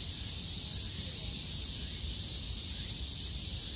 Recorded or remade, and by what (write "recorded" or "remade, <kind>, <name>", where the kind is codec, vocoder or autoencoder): recorded